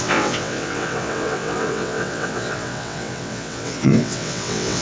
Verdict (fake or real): fake